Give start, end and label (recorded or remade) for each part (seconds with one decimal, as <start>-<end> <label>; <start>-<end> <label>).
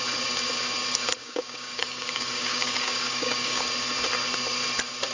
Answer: 0.0-1.2 recorded; 1.2-3.6 remade; 3.6-5.1 recorded